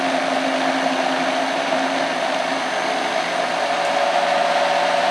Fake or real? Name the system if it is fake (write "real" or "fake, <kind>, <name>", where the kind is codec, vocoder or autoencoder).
real